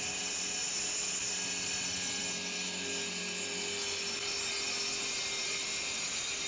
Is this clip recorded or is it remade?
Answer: recorded